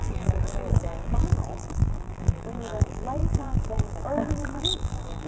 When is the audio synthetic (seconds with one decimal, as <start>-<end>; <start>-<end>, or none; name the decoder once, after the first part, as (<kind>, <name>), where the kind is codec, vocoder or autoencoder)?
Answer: 0.0-5.3 (vocoder, BigVGAN v2)

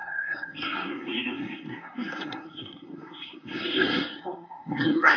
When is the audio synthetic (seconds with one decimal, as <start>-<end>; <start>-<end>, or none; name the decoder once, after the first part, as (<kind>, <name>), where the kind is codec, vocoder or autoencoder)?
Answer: 0.0-5.2 (codec, SNAC)

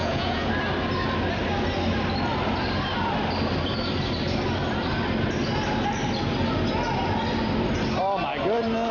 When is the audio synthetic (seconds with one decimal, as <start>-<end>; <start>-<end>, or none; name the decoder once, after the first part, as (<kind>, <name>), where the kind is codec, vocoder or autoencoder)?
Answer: 0.0-0.5 (vocoder, Vocos)

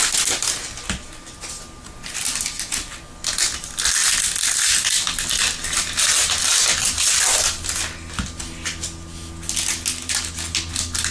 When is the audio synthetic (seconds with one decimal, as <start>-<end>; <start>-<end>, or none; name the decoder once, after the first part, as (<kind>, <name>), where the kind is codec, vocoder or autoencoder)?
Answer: none